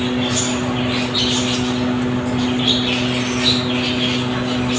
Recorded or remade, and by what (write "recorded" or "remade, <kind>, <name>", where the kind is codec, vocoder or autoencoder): recorded